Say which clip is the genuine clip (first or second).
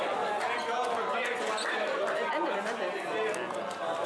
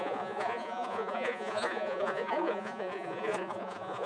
first